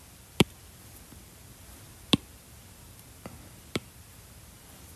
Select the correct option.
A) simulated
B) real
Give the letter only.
A